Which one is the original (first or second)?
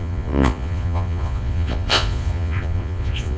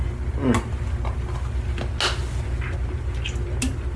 second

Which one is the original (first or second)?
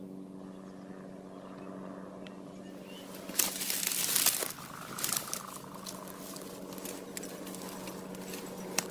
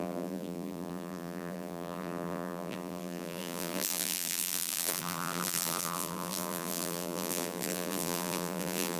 first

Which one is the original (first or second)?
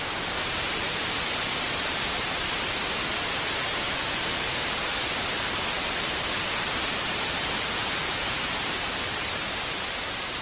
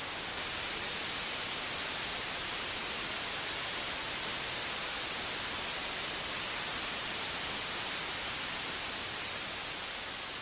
second